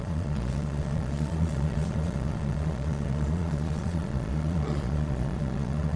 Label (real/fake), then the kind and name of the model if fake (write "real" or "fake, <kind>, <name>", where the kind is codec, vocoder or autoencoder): fake, vocoder, Vocos